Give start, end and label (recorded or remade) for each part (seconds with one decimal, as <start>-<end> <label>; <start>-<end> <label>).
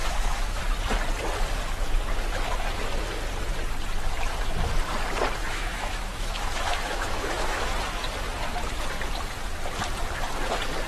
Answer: 0.0-0.6 remade; 0.6-5.4 recorded; 5.4-7.7 remade; 7.7-10.9 recorded